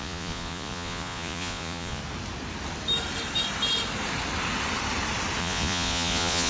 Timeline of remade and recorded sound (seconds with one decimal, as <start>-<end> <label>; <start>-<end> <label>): 0.0-2.0 remade; 2.0-5.4 recorded; 5.4-6.5 remade